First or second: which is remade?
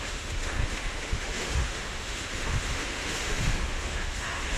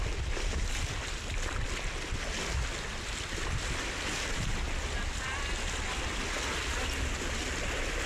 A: first